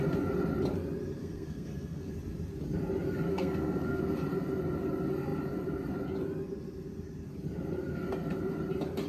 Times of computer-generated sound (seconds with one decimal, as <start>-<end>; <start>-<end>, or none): 1.2-2.1; 3.3-4.0